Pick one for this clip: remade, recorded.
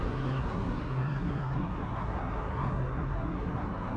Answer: remade